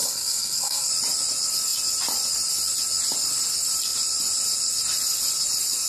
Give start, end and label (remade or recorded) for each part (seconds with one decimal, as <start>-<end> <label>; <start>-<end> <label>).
0.0-0.9 remade; 0.9-5.9 recorded